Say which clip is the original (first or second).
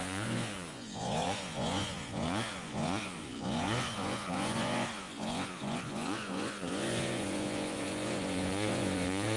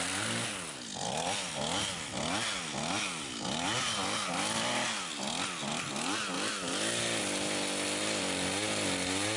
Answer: second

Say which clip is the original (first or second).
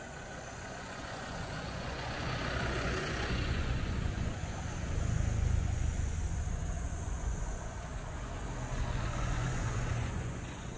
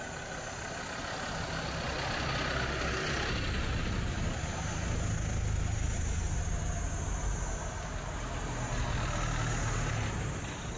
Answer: second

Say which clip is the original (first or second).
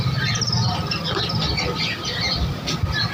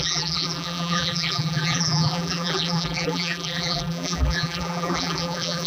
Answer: first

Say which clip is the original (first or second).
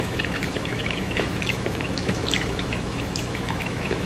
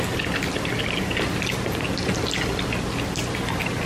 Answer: second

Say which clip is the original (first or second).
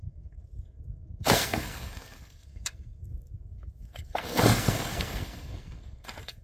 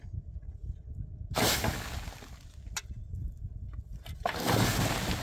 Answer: second